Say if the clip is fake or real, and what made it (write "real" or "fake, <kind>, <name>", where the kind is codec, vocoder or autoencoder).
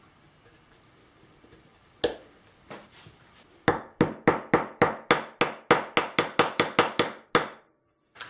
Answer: real